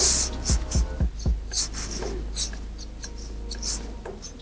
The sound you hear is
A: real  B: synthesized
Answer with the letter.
A